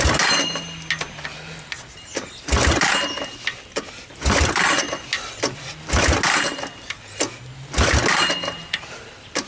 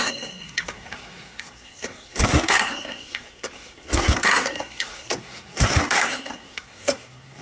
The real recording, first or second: first